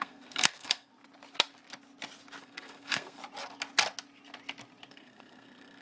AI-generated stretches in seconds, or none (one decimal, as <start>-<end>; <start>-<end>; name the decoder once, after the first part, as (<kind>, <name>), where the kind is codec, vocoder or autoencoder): 0.0-0.9 (codec, SNAC); 2.4-3.2; 4.9-5.8